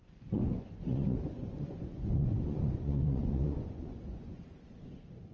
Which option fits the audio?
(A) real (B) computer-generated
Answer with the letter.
B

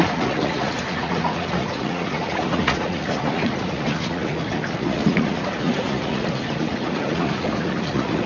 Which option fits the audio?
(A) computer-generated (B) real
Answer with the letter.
A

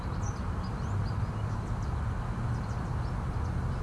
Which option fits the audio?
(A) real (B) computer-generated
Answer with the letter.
A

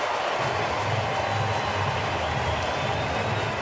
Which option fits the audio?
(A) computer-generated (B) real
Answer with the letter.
B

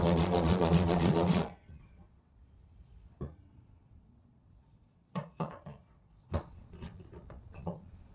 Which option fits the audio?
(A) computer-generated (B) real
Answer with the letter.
A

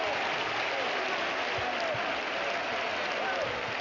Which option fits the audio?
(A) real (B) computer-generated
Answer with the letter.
A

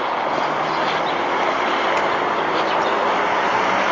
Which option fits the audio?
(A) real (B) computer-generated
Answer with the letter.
A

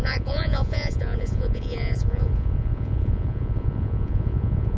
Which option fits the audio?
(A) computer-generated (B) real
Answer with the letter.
A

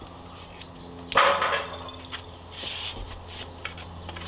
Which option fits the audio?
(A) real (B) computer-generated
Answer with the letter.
A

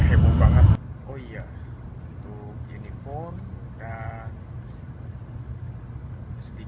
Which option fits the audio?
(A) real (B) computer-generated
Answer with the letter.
A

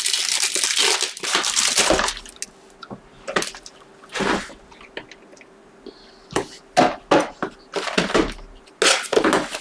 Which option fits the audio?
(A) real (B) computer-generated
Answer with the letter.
A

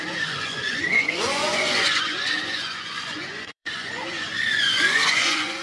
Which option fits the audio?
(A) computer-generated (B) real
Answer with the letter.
A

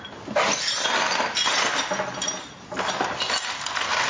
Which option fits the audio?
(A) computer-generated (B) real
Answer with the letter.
B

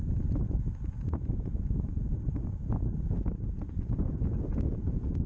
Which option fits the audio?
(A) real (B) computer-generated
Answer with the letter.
B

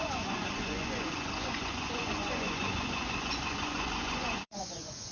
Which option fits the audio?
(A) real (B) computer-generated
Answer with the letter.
B